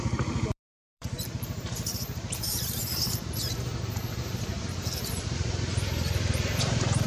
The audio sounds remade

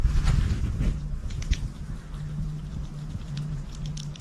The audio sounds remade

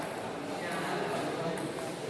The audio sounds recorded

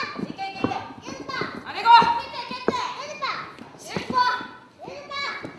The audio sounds recorded